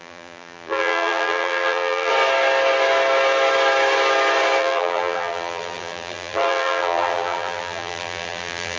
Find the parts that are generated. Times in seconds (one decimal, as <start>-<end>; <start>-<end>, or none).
0.0-2.1; 4.6-8.8